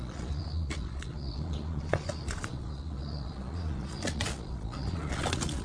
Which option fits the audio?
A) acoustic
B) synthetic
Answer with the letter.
B